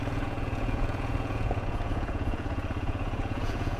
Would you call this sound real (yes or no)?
no